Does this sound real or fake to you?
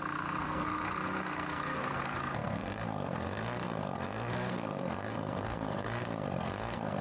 fake